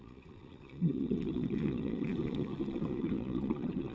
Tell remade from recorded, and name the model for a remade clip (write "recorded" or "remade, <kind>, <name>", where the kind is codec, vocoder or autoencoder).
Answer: remade, vocoder, Vocos